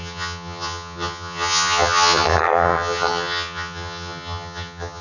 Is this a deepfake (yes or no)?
yes